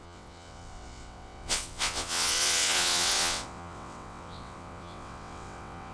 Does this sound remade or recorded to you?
remade